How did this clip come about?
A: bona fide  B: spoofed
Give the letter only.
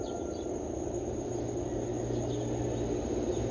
A